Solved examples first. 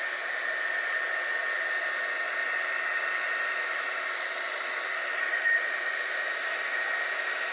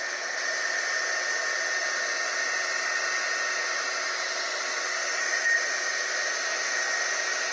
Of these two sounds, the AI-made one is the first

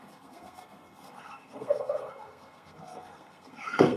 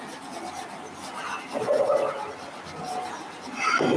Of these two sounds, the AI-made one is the first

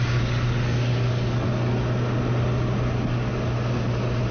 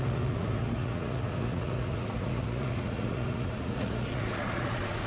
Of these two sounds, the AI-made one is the second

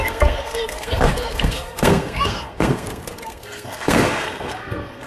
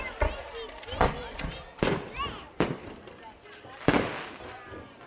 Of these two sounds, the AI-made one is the first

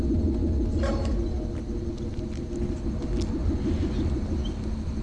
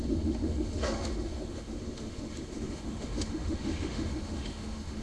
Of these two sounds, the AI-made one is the second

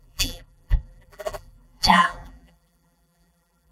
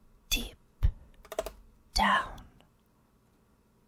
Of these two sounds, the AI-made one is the first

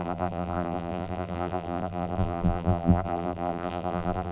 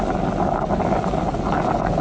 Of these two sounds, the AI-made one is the first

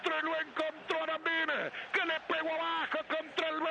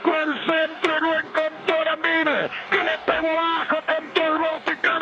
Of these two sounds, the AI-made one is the second